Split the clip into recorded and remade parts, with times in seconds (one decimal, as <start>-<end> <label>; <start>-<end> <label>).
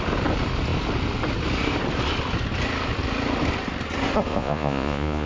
0.0-4.3 recorded; 4.3-5.3 remade